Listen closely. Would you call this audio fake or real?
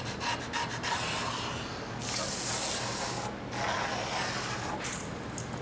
real